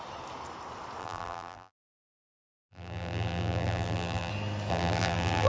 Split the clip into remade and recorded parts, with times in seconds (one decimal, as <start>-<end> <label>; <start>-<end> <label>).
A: 0.0-1.0 recorded; 1.0-4.3 remade; 4.3-4.7 recorded; 4.7-5.5 remade